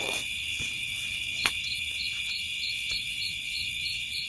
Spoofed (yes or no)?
yes